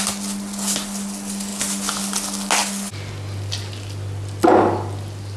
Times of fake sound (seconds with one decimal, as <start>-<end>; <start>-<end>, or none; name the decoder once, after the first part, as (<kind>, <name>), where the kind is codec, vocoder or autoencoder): none